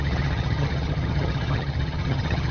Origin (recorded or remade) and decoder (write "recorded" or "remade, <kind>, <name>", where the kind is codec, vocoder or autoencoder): remade, vocoder, HiFi-GAN